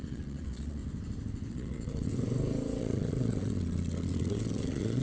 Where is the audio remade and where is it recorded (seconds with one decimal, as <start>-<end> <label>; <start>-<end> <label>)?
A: 0.0-0.8 remade; 0.8-1.5 recorded; 1.5-2.1 remade; 2.1-2.8 recorded; 2.8-5.0 remade